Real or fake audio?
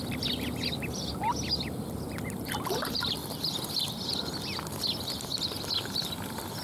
real